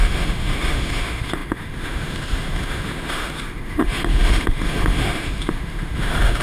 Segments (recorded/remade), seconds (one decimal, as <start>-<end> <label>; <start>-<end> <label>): 0.0-6.4 remade